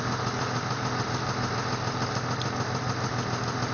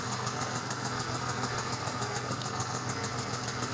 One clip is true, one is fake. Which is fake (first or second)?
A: second